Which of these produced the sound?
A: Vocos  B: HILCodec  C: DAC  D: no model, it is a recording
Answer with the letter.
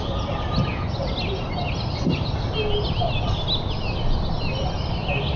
D